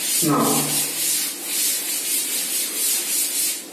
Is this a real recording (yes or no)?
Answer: yes